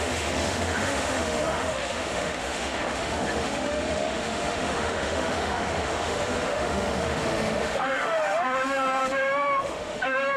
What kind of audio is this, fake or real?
fake